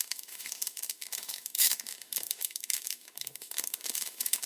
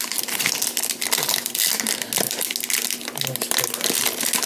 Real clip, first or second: second